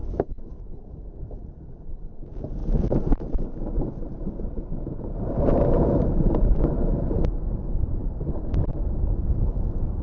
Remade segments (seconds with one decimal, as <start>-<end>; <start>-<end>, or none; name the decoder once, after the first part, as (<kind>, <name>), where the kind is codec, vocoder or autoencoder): 0.0-10.0 (vocoder, BigVGAN v2)